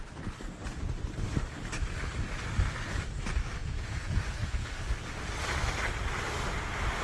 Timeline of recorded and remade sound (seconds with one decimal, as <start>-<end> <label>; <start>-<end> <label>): 0.0-3.6 recorded; 3.6-4.7 remade; 4.7-7.0 recorded